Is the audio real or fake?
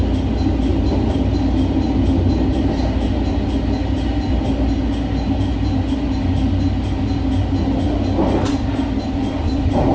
real